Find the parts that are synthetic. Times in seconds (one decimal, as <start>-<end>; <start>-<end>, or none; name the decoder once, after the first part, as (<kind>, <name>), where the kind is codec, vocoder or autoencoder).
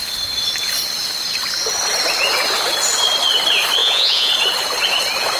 3.8-4.3 (vocoder, Vocos)